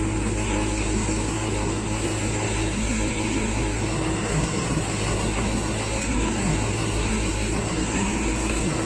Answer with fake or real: fake